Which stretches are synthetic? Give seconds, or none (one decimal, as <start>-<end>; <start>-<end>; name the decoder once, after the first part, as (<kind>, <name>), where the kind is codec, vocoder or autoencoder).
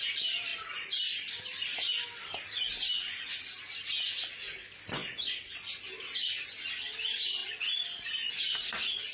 none